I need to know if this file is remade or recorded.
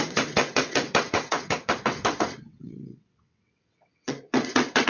remade